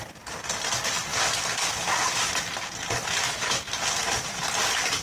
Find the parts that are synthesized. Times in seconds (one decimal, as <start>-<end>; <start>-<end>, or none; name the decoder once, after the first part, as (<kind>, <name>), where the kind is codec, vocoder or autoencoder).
1.1-1.7 (autoencoder, DAC-VAE); 3.2-3.7